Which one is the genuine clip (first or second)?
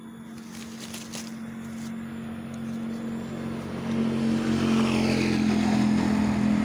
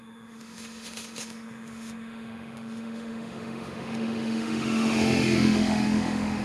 first